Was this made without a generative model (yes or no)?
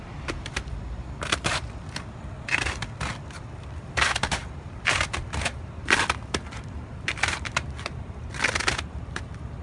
no